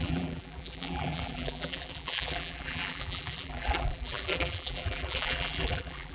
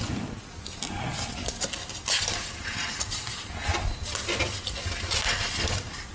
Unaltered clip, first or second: second